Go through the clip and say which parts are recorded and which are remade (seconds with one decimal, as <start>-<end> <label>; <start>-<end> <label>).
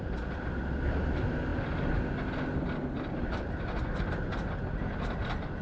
0.0-1.5 recorded; 1.5-4.0 remade; 4.0-5.6 recorded